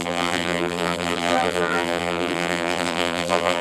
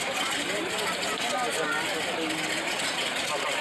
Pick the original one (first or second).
second